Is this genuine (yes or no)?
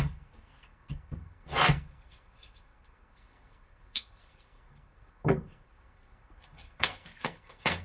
no